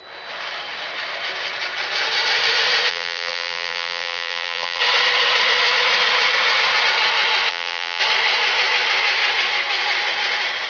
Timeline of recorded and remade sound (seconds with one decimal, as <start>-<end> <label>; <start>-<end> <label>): 0.0-2.9 recorded; 2.9-4.8 remade; 4.8-7.5 recorded; 7.5-8.0 remade; 8.0-10.7 recorded